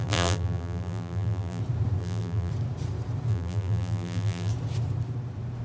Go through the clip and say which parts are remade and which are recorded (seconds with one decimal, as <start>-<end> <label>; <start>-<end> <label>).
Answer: 0.0-1.6 remade; 1.6-2.0 recorded; 2.0-2.5 remade; 2.5-3.3 recorded; 3.3-4.5 remade; 4.5-5.6 recorded